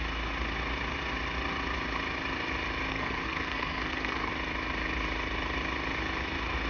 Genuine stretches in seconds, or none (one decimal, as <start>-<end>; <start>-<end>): 0.0-2.9; 4.3-6.7